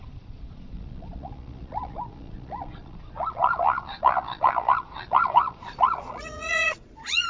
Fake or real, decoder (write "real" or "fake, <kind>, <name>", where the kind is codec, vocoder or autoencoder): fake, vocoder, Vocos